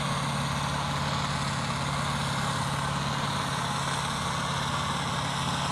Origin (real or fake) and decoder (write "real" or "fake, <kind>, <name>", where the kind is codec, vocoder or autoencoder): real